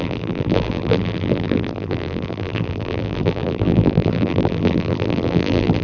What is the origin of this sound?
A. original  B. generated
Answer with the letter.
B